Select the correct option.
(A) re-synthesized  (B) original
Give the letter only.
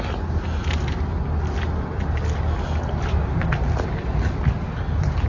B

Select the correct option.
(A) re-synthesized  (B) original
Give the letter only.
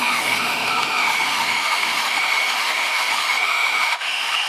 A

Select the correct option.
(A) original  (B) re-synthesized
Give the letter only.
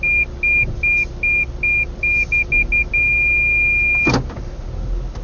A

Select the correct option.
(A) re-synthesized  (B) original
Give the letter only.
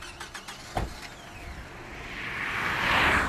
B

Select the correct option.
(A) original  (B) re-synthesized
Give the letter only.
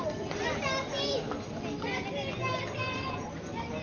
A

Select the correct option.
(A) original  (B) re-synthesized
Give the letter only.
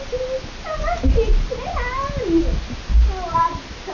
A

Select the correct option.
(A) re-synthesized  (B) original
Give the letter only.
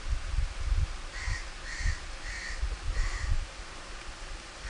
B